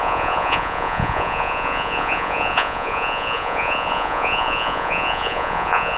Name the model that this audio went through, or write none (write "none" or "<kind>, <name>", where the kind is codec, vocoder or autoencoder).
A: vocoder, Vocos